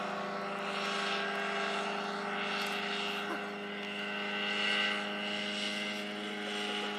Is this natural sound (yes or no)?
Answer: yes